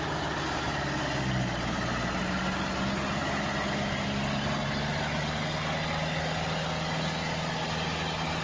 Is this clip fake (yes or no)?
no